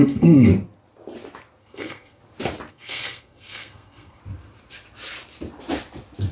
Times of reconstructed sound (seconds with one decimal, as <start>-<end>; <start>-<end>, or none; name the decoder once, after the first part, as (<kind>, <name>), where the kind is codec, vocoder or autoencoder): 0.0-0.5 (codec, SNAC); 1.6-2.2; 2.7-4.2